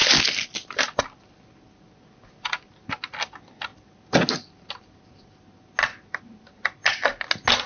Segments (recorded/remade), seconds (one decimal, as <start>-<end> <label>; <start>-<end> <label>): 0.0-7.7 recorded